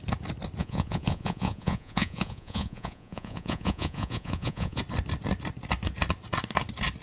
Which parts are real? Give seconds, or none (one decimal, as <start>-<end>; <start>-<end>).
0.0-0.6; 4.8-7.0